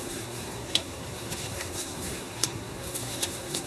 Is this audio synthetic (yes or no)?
yes